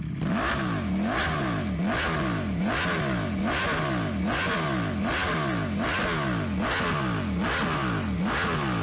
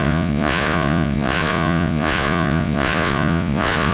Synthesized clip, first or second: second